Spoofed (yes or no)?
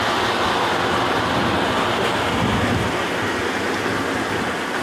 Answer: no